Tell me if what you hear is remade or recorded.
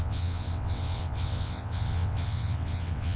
remade